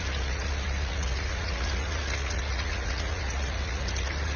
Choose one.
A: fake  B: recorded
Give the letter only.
A